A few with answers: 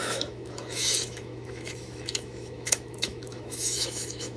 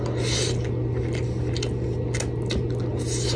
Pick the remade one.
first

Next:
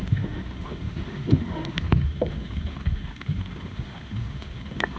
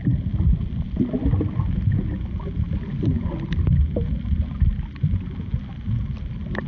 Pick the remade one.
first